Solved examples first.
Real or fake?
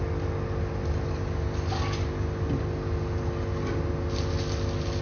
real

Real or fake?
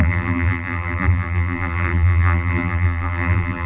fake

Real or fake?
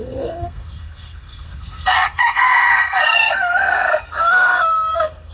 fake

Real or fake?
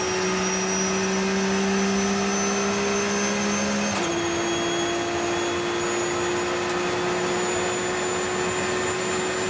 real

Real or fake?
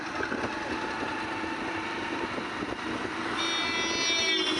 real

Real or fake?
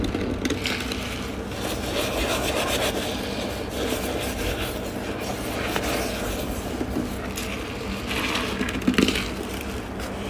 real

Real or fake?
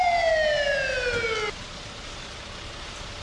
real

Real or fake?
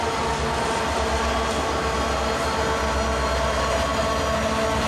real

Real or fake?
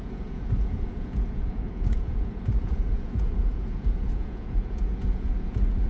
fake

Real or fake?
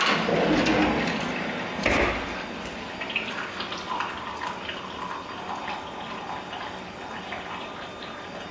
real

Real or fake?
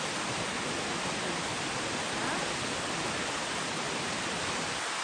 real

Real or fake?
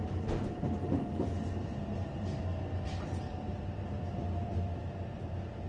fake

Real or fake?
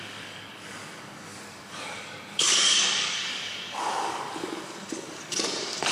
fake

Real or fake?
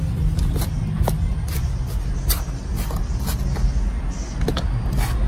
real